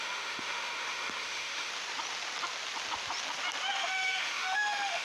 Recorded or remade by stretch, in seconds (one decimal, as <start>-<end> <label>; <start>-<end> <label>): 0.0-1.7 remade; 1.7-3.8 recorded; 3.8-5.0 remade

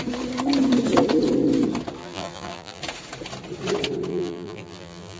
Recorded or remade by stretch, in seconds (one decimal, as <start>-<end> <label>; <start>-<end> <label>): 0.0-2.0 recorded; 2.0-2.8 remade; 2.8-4.1 recorded; 4.1-5.2 remade

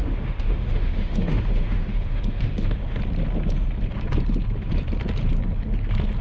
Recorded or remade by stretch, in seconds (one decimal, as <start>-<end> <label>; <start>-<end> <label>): 0.0-3.0 remade; 3.0-6.2 recorded

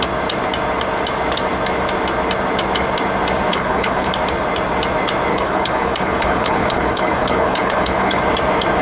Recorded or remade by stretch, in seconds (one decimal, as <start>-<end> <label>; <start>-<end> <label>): 0.0-3.5 recorded; 3.5-4.1 remade; 4.1-5.3 recorded; 5.3-8.2 remade; 8.2-8.8 recorded

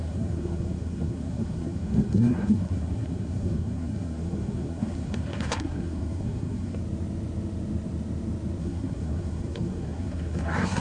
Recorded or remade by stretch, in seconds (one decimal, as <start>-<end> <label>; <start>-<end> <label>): 0.0-6.8 remade; 6.8-8.6 recorded; 8.6-10.8 remade

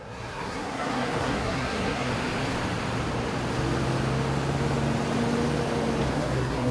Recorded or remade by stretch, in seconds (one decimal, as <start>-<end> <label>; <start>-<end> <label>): 0.0-2.1 remade; 2.1-6.1 recorded; 6.1-6.7 remade

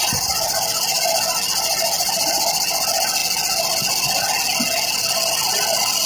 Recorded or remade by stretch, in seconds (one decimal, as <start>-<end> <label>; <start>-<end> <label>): 0.0-6.1 recorded